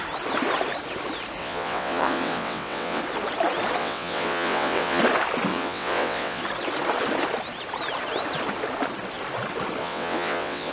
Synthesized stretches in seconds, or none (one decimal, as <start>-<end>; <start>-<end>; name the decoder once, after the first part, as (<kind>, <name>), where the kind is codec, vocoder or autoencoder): 1.4-3.0 (vocoder, WaveNeXt); 3.8-5.0; 5.5-6.4; 9.8-10.7